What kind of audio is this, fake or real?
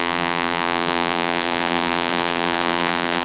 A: fake